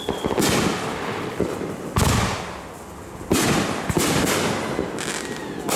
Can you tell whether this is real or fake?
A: real